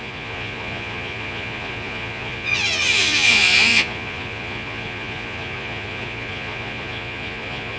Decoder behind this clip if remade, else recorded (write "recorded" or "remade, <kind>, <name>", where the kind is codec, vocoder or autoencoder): remade, vocoder, Vocos